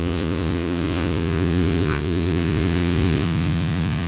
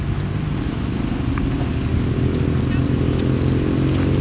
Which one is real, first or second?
second